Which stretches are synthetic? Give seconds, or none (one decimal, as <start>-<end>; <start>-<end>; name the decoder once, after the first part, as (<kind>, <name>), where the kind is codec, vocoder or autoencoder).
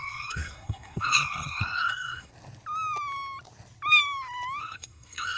0.0-2.3 (codec, SNAC); 4.6-5.4